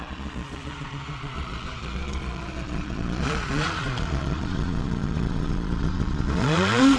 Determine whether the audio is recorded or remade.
remade